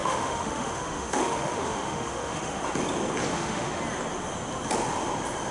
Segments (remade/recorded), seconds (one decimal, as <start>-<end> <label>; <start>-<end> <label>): 0.0-2.6 remade; 2.6-3.3 recorded; 3.3-3.8 remade; 3.8-5.5 recorded

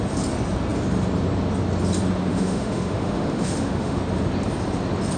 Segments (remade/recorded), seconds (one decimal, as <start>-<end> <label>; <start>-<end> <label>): 0.0-2.3 recorded; 2.3-4.0 remade; 4.0-5.2 recorded

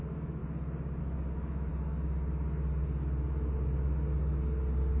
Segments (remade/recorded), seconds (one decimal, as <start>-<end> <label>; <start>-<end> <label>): 0.0-0.4 remade; 0.4-1.0 recorded; 1.0-1.7 remade; 1.7-5.0 recorded

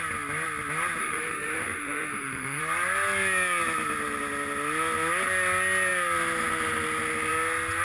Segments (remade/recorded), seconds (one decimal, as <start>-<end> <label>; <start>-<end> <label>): 0.0-1.0 recorded; 1.0-2.6 remade; 2.6-7.8 recorded

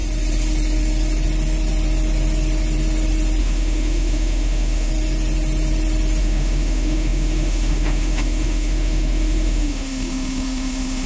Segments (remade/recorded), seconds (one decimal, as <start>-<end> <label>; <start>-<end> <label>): 0.0-3.4 recorded; 3.4-4.9 remade; 4.9-6.2 recorded; 6.2-11.1 remade